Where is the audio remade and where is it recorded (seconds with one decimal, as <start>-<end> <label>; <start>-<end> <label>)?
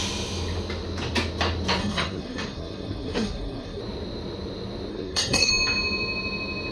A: 0.0-1.8 recorded; 1.8-3.8 remade; 3.8-4.9 recorded; 4.9-5.5 remade; 5.5-6.7 recorded